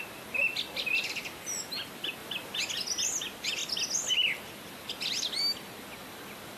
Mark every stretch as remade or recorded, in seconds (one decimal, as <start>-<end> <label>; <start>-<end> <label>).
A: 0.0-6.6 recorded